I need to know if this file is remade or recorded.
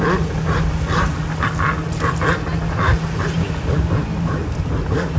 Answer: recorded